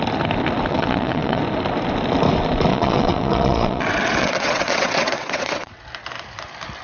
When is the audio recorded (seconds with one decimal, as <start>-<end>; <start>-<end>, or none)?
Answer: 0.0-0.7; 1.4-2.7; 5.8-6.8